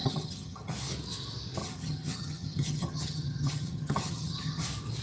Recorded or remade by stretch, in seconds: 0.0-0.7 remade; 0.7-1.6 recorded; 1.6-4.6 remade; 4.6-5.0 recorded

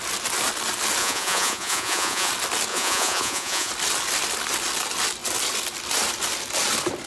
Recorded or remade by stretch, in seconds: 0.0-1.0 recorded; 1.0-2.3 remade; 2.3-2.7 recorded; 2.7-3.7 remade; 3.7-7.1 recorded

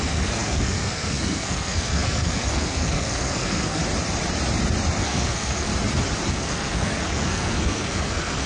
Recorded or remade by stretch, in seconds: 0.0-3.8 remade; 3.8-5.0 recorded; 5.0-5.7 remade; 5.7-6.3 recorded; 6.3-8.5 remade

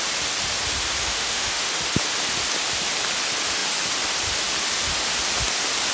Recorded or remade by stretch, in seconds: 0.0-1.0 recorded; 1.0-1.7 remade; 1.7-5.9 recorded

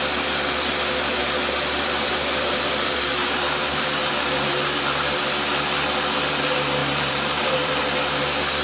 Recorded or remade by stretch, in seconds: 0.0-1.2 recorded; 1.2-4.8 remade; 4.8-6.8 recorded; 6.8-7.8 remade; 7.8-8.6 recorded

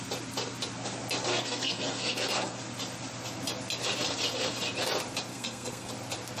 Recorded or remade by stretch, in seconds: 0.0-1.3 recorded; 1.3-2.6 remade; 2.6-5.3 recorded; 5.3-5.9 remade; 5.9-6.4 recorded